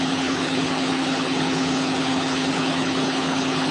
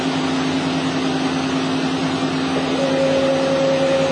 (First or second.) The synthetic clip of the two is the first